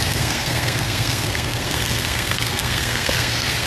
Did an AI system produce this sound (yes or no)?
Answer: yes